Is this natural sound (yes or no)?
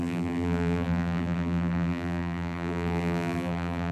no